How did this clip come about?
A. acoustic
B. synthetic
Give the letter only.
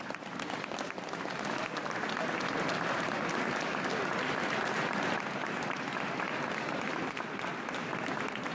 A